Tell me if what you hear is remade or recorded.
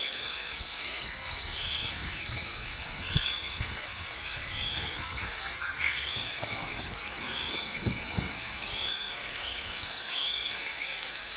remade